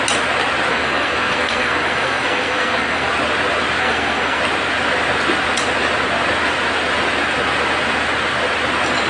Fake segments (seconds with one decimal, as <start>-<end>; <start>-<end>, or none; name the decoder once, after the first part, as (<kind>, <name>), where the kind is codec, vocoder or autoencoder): 0.7-3.1 (codec, SNAC); 3.8-4.4